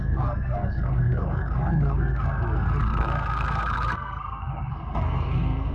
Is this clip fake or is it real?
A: fake